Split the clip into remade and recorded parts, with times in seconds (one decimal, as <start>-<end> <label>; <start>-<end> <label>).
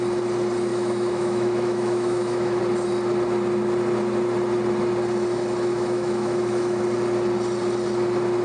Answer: 0.0-0.7 recorded; 0.7-2.6 remade; 2.6-5.7 recorded; 5.7-6.8 remade; 6.8-8.4 recorded